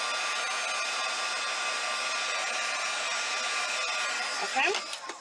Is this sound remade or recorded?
recorded